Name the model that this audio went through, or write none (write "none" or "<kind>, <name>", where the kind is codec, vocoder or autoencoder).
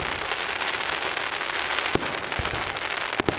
none